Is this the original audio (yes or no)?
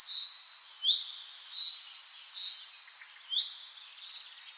yes